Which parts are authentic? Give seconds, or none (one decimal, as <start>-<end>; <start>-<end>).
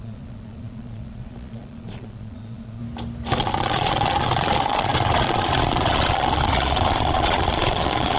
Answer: 2.8-3.4